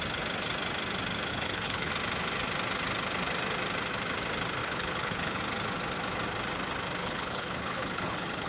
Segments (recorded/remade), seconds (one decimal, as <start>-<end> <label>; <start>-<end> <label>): 0.0-1.3 recorded; 1.3-1.9 remade; 1.9-4.6 recorded; 4.6-5.4 remade; 5.4-7.0 recorded; 7.0-8.5 remade